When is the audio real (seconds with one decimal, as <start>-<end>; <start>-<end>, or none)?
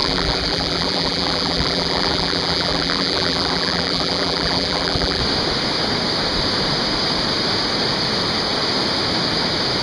5.2-9.8